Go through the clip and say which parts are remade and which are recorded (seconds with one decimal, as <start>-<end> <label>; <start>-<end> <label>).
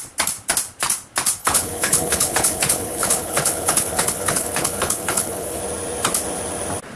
0.0-1.4 recorded; 1.4-5.6 remade; 5.6-7.0 recorded